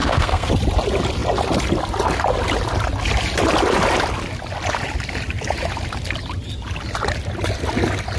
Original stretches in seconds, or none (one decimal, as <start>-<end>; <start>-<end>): 0.5-8.2